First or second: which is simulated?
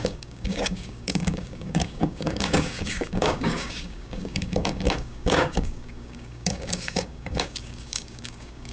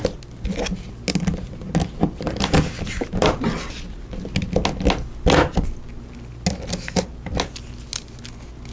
first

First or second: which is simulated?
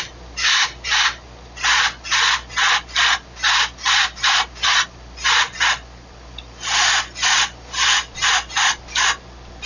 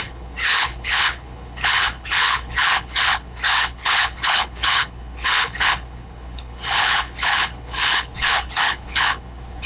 second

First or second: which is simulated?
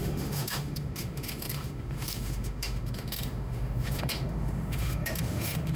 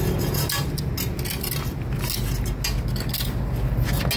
first